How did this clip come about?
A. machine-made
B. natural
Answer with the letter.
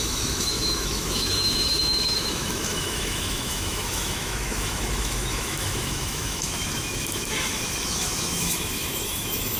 A